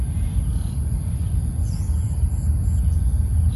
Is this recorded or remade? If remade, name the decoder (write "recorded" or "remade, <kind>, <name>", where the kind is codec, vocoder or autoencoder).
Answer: recorded